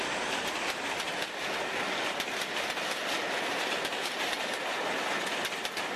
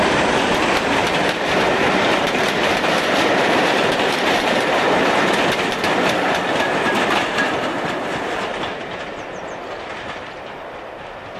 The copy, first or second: second